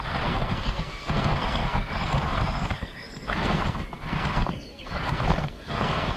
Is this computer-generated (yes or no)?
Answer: yes